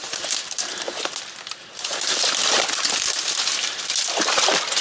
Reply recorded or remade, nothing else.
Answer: recorded